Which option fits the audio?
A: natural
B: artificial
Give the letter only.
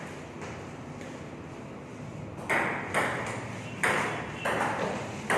A